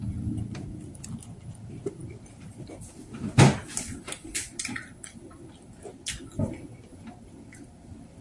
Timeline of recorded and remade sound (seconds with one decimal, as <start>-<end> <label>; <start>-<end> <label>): 0.0-8.2 recorded